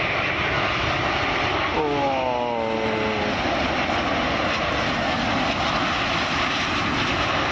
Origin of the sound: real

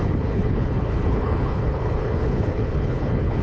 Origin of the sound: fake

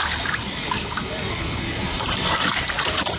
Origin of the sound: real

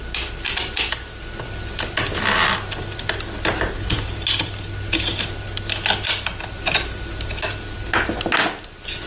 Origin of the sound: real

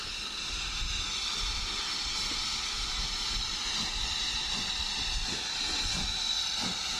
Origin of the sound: real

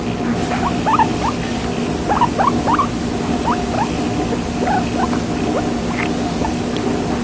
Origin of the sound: real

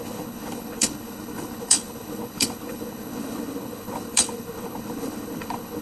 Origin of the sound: fake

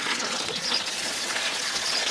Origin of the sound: fake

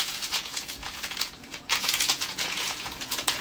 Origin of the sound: fake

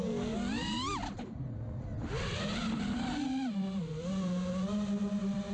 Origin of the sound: real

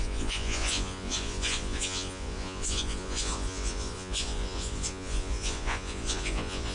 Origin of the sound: fake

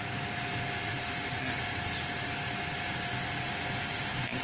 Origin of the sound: real